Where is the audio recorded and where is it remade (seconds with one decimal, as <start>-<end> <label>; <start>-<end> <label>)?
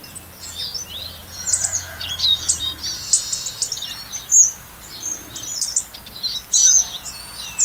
0.0-1.2 recorded; 1.2-2.7 remade; 2.7-6.6 recorded; 6.6-7.1 remade; 7.1-7.6 recorded